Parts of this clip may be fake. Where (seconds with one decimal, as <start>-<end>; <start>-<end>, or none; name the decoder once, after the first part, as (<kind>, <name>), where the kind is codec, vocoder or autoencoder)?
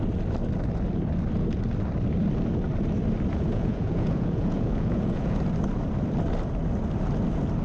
3.3-5.4 (vocoder, Vocos)